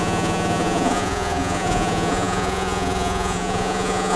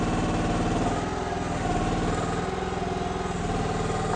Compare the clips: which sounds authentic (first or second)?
second